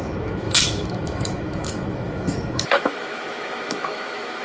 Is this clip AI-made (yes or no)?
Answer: yes